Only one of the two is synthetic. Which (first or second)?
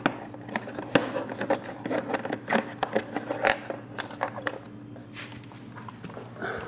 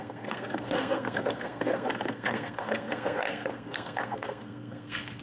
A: second